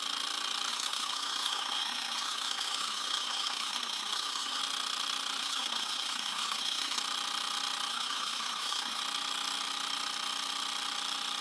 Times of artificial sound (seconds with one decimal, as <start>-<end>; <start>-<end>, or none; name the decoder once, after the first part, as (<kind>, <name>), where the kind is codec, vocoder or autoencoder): 0.7-4.6 (codec, SNAC); 5.4-7.0; 7.9-9.0